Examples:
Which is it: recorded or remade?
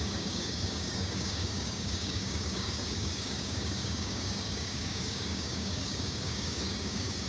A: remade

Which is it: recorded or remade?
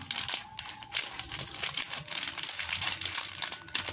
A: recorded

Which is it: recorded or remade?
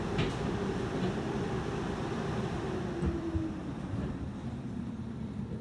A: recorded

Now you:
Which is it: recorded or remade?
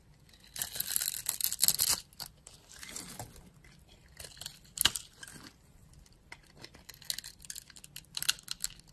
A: recorded